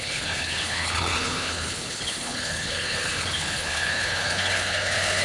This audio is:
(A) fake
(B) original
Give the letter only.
A